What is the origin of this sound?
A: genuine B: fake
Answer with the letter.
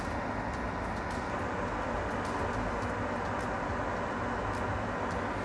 A